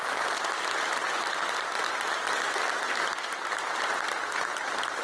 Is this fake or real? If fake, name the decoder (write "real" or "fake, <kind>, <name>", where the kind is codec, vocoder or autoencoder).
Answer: real